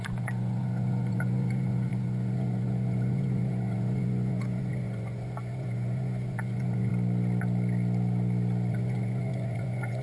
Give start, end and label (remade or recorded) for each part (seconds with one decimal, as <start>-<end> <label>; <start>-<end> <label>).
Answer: 0.0-6.9 remade; 6.9-8.7 recorded; 8.7-10.0 remade